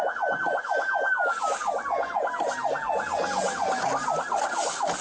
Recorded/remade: recorded